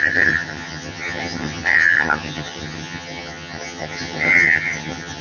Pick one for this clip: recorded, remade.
remade